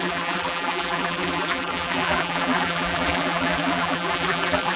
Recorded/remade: remade